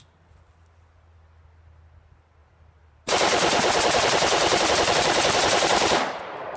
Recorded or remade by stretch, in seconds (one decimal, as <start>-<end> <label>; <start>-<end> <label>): 0.0-2.4 recorded; 2.4-6.6 remade